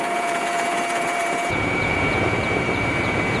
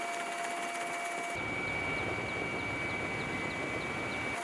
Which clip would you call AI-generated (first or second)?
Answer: first